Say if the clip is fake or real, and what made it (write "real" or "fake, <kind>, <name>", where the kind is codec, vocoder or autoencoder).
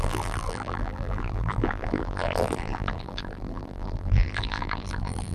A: fake, vocoder, BigVGAN v2